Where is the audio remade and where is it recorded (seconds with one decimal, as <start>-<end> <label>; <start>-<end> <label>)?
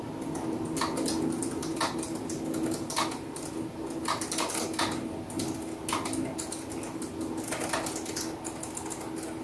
0.0-9.4 recorded